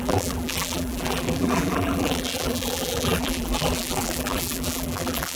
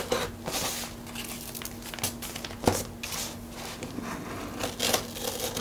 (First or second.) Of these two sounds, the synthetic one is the first